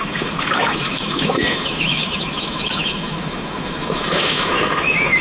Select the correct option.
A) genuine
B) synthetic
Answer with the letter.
B